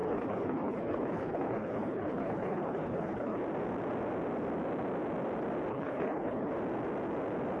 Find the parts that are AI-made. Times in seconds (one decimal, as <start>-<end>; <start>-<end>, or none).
0.0-3.4; 5.7-6.5